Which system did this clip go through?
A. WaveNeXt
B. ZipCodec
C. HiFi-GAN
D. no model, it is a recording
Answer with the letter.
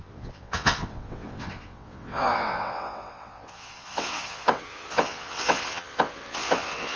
A